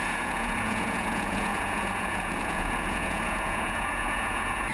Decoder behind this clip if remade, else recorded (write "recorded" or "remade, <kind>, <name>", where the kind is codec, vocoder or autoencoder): remade, vocoder, Vocos